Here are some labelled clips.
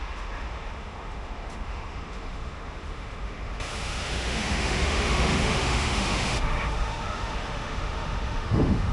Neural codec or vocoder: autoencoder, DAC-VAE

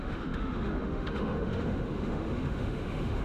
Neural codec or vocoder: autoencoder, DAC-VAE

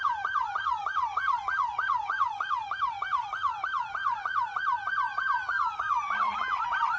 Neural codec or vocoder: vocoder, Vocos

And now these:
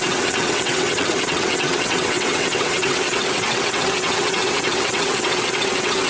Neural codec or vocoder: vocoder, WaveNeXt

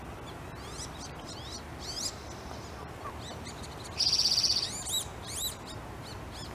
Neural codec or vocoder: none